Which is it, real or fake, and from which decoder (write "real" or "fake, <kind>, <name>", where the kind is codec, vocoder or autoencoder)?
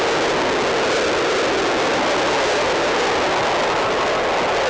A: real